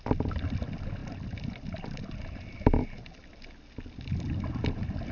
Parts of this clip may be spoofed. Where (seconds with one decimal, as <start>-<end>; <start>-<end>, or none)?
none